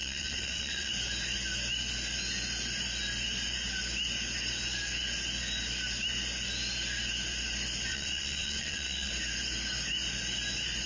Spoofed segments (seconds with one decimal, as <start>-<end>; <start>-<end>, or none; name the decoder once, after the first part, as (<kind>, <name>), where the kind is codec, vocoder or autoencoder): 0.0-0.9 (vocoder, WaveNeXt); 7.9-9.1